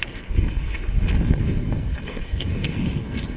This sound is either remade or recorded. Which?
remade